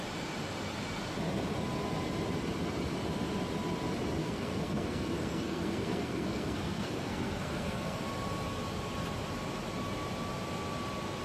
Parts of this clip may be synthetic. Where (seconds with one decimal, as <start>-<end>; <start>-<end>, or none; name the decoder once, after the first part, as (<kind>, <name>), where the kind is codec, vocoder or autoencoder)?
4.2-8.0 (codec, SNAC)